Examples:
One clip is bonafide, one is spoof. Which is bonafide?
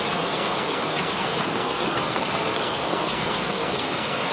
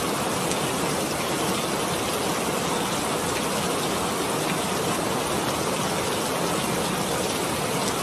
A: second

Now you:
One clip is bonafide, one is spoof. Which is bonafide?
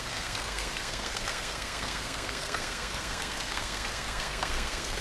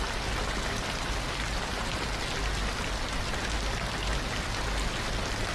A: second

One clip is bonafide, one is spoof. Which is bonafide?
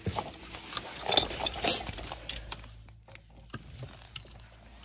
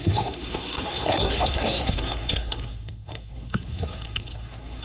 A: first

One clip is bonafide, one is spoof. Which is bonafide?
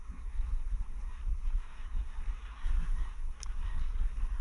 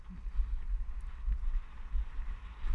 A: second